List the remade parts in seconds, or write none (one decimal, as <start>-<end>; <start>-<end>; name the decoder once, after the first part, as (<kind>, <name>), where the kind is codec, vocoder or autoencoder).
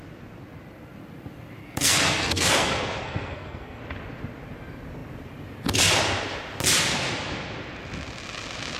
1.6-3.8 (codec, SNAC)